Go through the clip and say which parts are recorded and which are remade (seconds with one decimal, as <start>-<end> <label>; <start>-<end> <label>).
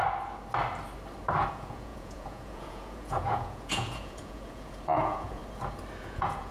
0.0-1.5 recorded; 1.5-5.4 remade; 5.4-6.0 recorded; 6.0-6.5 remade